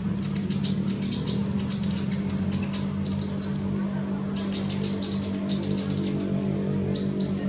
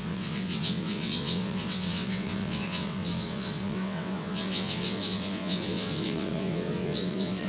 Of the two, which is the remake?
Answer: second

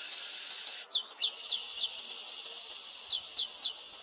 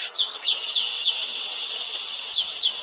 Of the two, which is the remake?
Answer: second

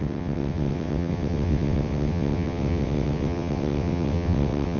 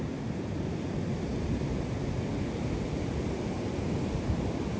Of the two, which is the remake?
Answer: first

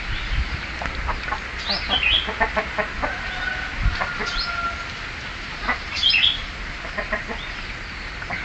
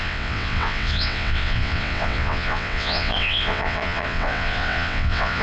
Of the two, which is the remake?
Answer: second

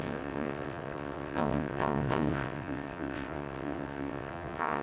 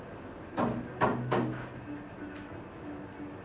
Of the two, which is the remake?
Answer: first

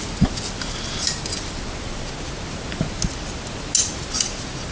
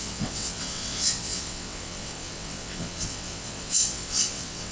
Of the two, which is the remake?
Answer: second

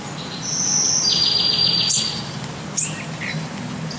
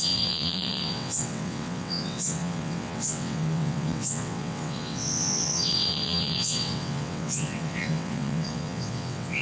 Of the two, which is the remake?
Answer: second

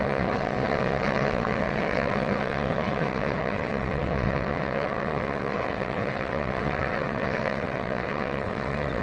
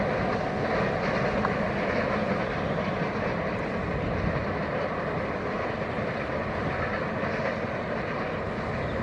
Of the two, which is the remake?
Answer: first